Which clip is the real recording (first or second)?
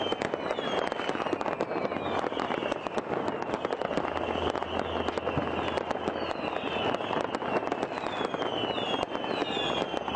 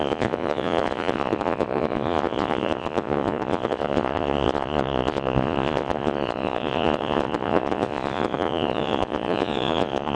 first